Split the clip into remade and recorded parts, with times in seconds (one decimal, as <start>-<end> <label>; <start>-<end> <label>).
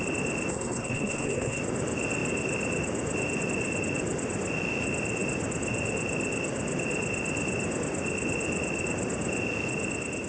0.0-0.5 recorded; 0.5-1.6 remade; 1.6-10.3 recorded